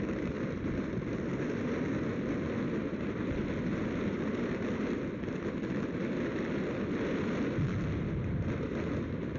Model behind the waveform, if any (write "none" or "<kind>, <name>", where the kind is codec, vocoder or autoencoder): none